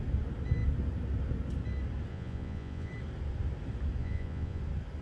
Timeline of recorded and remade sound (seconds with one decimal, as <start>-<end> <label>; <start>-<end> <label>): 0.0-2.1 recorded; 2.1-2.9 remade; 2.9-4.0 recorded; 4.0-4.6 remade; 4.6-5.0 recorded